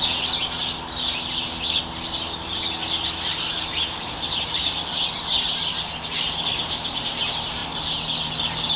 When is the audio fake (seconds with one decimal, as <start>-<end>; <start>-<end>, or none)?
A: none